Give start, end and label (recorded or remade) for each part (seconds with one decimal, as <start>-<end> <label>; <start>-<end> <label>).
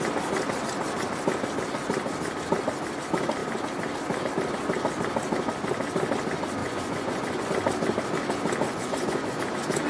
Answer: 0.0-6.6 recorded; 6.6-7.5 remade; 7.5-8.7 recorded; 8.7-9.4 remade; 9.4-9.9 recorded